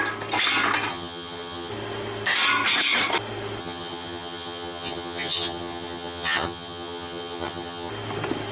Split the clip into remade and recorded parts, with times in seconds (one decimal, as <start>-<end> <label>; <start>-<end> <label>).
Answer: 0.0-0.9 recorded; 0.9-1.7 remade; 1.7-3.6 recorded; 3.6-7.9 remade; 7.9-8.5 recorded